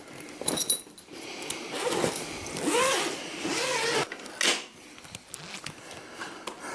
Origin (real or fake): real